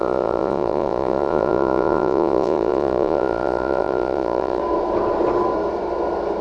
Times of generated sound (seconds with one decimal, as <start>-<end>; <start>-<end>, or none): 0.0-4.6